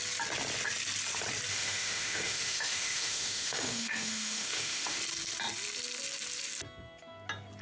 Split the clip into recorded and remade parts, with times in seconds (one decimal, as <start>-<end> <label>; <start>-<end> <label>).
0.0-1.5 recorded; 1.5-5.0 remade; 5.0-7.6 recorded